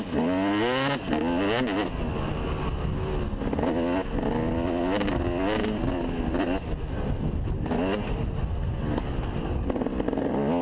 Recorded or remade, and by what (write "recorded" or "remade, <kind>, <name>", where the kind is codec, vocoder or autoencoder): recorded